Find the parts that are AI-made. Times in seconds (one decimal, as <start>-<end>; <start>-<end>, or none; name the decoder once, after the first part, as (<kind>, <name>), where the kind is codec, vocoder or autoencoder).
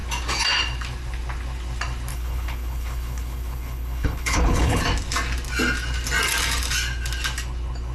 2.1-4.8 (codec, HILCodec)